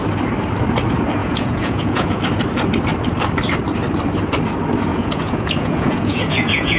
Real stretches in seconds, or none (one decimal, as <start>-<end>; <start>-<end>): 0.0-1.2; 2.2-4.9